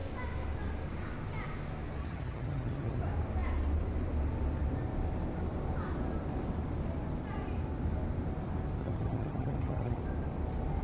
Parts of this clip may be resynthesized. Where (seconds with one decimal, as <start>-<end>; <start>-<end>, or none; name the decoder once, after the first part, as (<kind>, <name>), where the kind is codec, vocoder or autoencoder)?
2.0-3.0 (vocoder, HiFi-GAN); 8.8-10.0

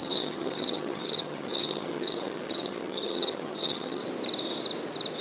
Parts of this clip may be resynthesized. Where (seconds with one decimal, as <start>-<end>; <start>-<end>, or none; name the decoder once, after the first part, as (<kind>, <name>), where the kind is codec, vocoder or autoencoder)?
0.0-4.0 (vocoder, HiFi-GAN)

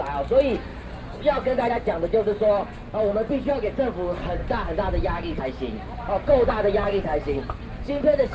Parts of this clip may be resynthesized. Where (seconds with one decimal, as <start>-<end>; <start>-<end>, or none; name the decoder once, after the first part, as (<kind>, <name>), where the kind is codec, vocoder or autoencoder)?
none

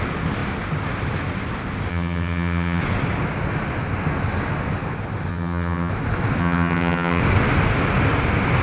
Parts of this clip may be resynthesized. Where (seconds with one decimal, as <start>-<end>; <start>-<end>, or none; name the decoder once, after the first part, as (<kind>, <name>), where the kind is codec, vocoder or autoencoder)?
1.9-2.8 (vocoder, HiFi-GAN); 5.3-5.9; 6.4-7.2

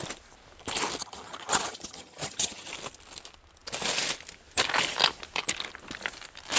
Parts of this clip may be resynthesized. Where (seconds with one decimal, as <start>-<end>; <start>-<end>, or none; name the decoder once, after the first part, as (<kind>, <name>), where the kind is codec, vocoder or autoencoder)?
1.0-2.7 (vocoder, HiFi-GAN)

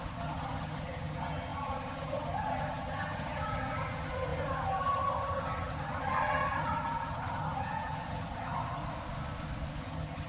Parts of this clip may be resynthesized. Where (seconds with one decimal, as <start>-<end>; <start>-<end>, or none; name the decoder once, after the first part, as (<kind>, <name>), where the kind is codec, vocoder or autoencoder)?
0.0-8.8 (vocoder, HiFi-GAN); 9.8-10.3

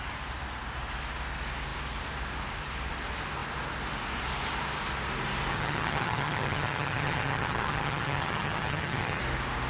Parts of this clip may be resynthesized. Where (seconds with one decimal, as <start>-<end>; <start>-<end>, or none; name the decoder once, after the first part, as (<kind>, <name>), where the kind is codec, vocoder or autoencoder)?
5.5-9.2 (vocoder, HiFi-GAN)